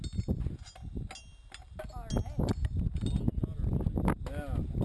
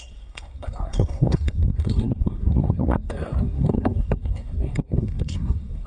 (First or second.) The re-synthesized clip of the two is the second